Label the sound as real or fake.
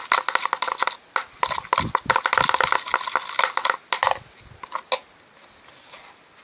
real